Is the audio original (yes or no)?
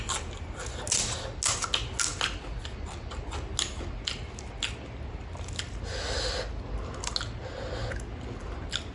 yes